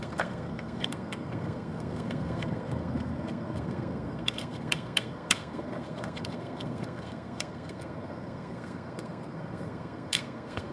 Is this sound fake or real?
fake